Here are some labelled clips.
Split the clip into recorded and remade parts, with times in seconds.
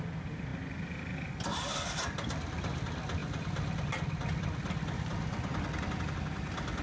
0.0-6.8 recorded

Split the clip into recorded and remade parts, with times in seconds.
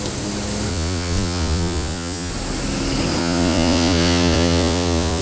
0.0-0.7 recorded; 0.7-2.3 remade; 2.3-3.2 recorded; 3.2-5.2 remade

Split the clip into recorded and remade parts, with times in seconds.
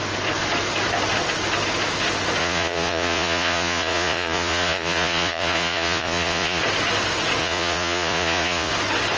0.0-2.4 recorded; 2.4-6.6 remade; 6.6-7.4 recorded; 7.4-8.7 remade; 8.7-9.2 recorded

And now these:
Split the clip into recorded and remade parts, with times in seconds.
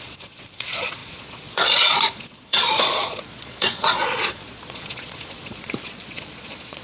0.0-6.8 remade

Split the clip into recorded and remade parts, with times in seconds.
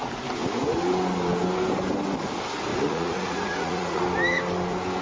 0.0-2.7 recorded; 2.7-4.0 remade; 4.0-5.0 recorded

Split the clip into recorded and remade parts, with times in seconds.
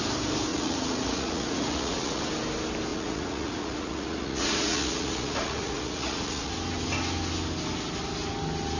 0.0-0.5 recorded; 0.5-2.2 remade; 2.2-2.9 recorded; 2.9-6.5 remade; 6.5-8.8 recorded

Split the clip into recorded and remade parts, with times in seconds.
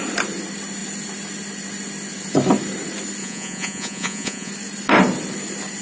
0.0-3.2 recorded; 3.2-4.5 remade; 4.5-5.8 recorded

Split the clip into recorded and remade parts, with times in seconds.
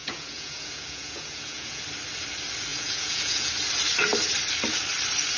0.0-1.8 remade; 1.8-2.7 recorded; 2.7-3.5 remade; 3.5-5.4 recorded